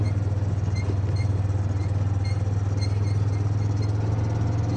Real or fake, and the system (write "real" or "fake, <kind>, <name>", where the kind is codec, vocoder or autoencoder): real